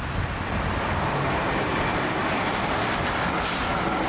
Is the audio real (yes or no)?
no